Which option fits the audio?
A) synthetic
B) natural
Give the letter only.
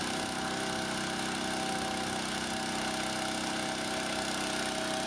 B